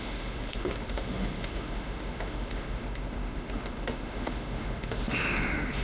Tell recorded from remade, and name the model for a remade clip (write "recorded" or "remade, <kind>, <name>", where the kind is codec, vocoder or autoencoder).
remade, autoencoder, DAC-VAE